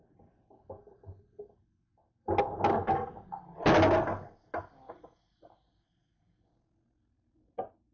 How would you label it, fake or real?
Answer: real